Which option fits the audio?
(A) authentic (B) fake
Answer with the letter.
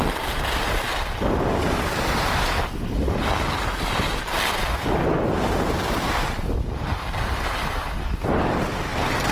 A